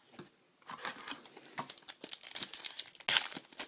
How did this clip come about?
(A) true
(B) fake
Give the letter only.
A